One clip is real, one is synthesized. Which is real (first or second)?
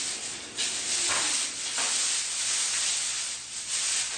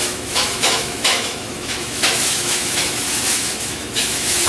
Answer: first